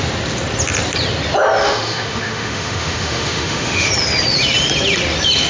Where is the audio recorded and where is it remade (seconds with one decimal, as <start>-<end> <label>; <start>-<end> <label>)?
0.0-1.6 recorded; 1.6-3.9 remade; 3.9-5.5 recorded